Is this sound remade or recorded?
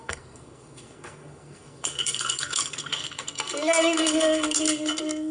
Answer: remade